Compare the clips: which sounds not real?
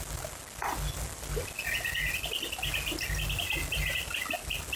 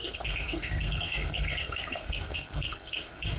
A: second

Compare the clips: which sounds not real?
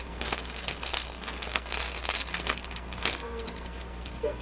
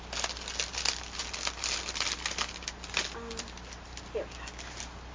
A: first